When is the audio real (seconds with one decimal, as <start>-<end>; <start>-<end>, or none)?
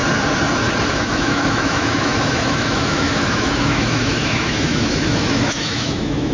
0.0-0.9